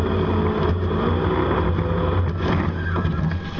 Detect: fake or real real